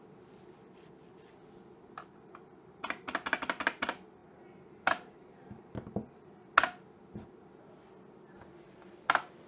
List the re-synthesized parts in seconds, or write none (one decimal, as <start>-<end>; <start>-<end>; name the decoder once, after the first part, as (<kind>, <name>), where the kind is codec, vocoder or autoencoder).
none